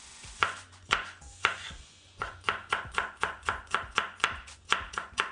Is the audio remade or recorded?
remade